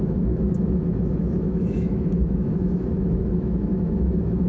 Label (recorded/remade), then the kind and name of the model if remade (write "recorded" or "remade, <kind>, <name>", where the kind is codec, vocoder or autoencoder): remade, autoencoder, DAC-VAE